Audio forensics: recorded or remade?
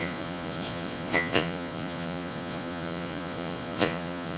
remade